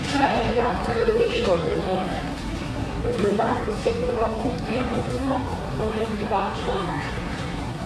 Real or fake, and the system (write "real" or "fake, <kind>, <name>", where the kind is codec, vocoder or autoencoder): fake, codec, SNAC